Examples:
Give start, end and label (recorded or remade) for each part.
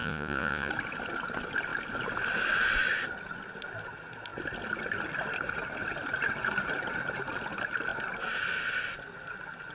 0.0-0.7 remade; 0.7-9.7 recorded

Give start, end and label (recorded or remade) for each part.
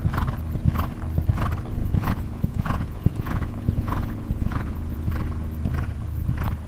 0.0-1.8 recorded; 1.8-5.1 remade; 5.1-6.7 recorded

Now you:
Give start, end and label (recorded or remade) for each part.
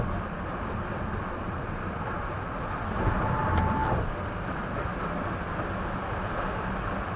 0.0-7.2 recorded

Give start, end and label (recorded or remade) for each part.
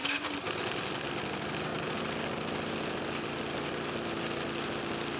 0.0-5.2 recorded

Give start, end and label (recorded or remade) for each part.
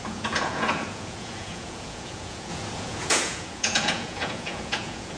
0.0-5.2 remade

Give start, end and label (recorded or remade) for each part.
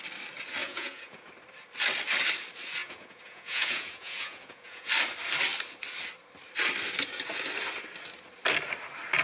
0.0-0.6 recorded; 0.6-1.3 remade; 1.3-2.8 recorded; 2.8-4.9 remade; 4.9-9.2 recorded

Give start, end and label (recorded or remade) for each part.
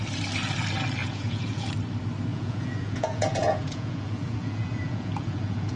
0.0-1.0 recorded; 1.0-1.7 remade; 1.7-2.3 recorded; 2.3-5.8 remade